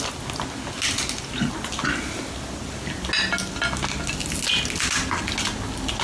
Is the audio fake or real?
real